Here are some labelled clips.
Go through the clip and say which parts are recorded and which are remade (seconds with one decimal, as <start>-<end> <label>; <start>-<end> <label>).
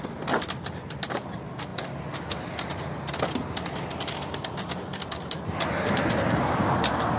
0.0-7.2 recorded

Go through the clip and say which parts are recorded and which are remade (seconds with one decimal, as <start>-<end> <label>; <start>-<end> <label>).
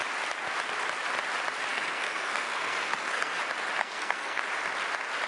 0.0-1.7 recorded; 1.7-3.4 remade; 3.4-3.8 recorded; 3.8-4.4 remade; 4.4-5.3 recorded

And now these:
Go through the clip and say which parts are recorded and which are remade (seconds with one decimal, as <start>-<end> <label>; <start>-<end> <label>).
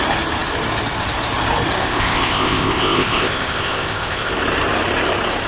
0.0-1.8 recorded; 1.8-4.3 remade; 4.3-5.5 recorded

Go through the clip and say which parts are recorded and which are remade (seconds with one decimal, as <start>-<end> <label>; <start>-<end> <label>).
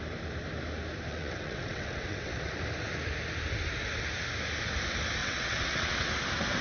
0.0-1.1 recorded; 1.1-2.5 remade; 2.5-5.2 recorded; 5.2-6.1 remade; 6.1-6.6 recorded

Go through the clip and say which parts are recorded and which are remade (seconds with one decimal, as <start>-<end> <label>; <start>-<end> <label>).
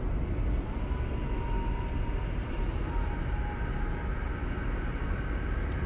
0.0-5.9 recorded